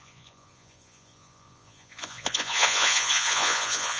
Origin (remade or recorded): remade